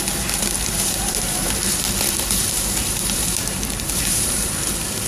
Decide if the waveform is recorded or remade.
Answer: remade